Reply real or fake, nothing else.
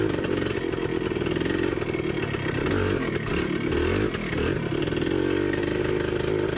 real